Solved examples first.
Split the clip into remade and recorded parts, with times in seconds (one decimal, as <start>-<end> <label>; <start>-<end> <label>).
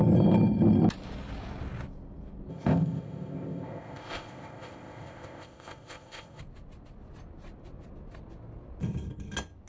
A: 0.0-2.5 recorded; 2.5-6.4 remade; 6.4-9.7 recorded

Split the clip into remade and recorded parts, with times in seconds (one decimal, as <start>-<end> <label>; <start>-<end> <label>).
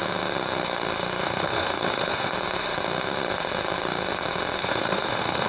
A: 0.0-1.2 recorded; 1.2-2.3 remade; 2.3-4.6 recorded; 4.6-5.5 remade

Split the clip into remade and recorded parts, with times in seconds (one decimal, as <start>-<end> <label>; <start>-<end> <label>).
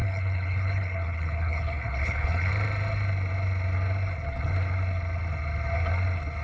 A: 0.0-2.5 remade; 2.5-6.4 recorded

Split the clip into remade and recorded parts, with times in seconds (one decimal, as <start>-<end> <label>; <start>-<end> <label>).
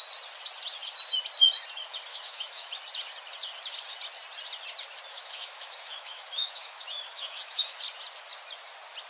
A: 0.0-2.1 recorded; 2.1-2.7 remade; 2.7-5.1 recorded; 5.1-7.8 remade; 7.8-9.1 recorded